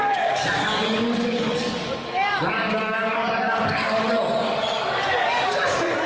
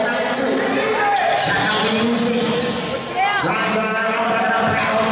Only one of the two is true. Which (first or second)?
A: second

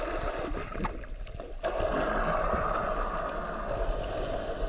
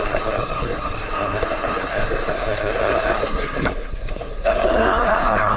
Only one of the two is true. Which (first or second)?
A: first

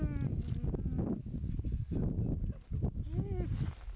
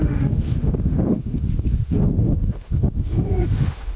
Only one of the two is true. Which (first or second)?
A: first